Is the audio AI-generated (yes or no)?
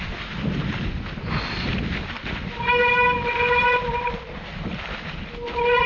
no